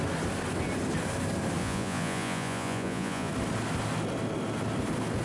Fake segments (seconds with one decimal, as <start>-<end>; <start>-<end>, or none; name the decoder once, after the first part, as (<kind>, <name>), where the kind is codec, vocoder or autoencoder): 1.6-3.3 (vocoder, Vocos)